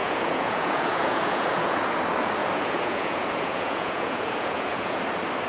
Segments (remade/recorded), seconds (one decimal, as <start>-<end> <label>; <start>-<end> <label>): 0.0-1.9 remade; 1.9-2.4 recorded; 2.4-5.0 remade; 5.0-5.5 recorded